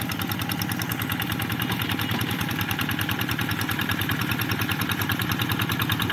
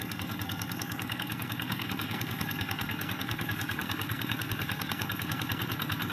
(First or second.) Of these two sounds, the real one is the first